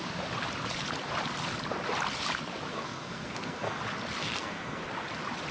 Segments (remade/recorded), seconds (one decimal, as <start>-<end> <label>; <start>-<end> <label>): 0.0-2.7 recorded; 2.7-3.8 remade; 3.8-4.2 recorded; 4.2-4.8 remade; 4.8-5.5 recorded